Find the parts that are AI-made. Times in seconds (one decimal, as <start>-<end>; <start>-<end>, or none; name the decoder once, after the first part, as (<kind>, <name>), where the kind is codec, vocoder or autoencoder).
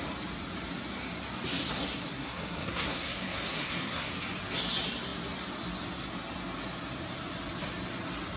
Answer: 1.6-4.1 (codec, SNAC)